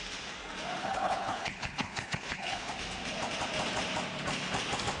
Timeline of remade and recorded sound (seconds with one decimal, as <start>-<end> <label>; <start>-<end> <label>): 0.0-0.8 recorded; 0.8-2.7 remade; 2.7-5.0 recorded